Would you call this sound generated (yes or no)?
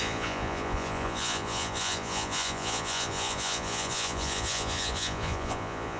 yes